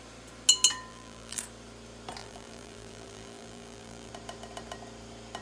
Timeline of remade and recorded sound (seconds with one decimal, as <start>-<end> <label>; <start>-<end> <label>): 0.0-0.9 recorded; 0.9-1.4 remade; 1.4-2.2 recorded; 2.2-4.1 remade; 4.1-5.4 recorded